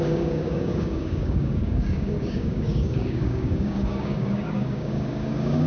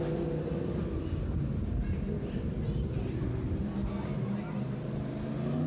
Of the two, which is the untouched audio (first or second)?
second